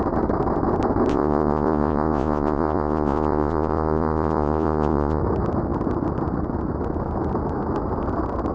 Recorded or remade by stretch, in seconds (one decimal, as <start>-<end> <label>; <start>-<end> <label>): 0.0-1.1 recorded; 1.1-5.2 remade; 5.2-8.5 recorded